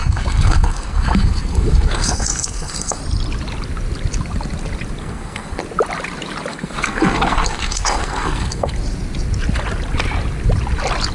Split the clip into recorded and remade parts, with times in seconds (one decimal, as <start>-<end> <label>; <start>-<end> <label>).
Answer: 0.0-3.0 remade; 3.0-5.0 recorded; 5.0-5.6 remade; 5.6-6.5 recorded; 6.5-8.7 remade; 8.7-11.1 recorded

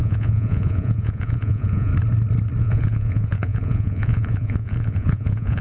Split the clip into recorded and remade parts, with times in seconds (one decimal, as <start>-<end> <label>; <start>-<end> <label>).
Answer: 0.0-1.9 remade; 1.9-2.6 recorded; 2.6-5.6 remade

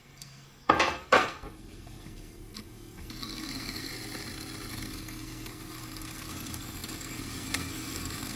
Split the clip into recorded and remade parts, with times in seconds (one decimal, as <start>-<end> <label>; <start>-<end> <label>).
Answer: 0.0-3.9 remade; 3.9-4.7 recorded; 4.7-8.4 remade

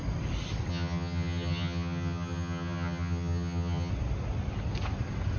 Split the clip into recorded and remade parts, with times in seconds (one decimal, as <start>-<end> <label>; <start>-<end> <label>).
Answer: 0.0-0.7 recorded; 0.7-3.9 remade; 3.9-5.4 recorded